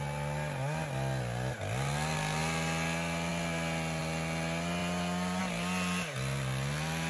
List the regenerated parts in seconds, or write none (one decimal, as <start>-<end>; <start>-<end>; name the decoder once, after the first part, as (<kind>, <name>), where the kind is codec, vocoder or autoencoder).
none